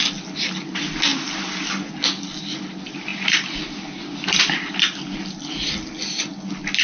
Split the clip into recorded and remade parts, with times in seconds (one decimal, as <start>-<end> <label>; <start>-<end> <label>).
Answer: 0.0-6.8 recorded